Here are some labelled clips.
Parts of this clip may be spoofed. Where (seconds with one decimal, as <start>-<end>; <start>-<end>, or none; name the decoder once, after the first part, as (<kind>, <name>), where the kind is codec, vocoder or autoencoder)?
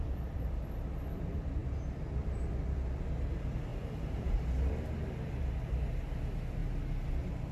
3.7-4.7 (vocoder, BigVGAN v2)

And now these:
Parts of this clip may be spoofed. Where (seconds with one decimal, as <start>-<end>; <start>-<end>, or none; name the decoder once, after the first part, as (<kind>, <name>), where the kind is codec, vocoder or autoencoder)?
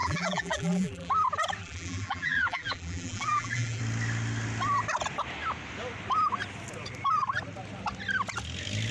0.0-1.1 (vocoder, BigVGAN v2); 1.6-3.8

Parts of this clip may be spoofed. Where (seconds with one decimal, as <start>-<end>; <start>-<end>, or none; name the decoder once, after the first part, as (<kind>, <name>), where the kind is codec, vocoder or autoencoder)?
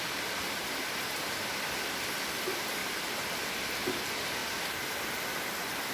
2.8-3.3 (vocoder, BigVGAN v2)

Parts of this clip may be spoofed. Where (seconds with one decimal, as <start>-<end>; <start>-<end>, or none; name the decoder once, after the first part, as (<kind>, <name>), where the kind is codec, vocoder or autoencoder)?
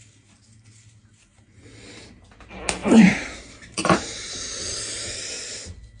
2.8-5.3 (vocoder, BigVGAN v2)